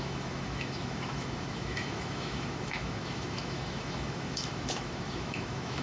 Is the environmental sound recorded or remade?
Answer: remade